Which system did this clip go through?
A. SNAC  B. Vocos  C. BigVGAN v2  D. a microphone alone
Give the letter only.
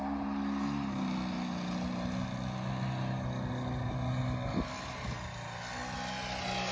D